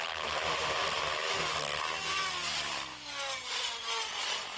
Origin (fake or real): real